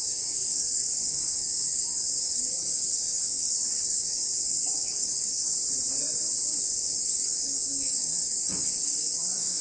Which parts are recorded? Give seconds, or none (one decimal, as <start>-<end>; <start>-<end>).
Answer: 5.5-6.6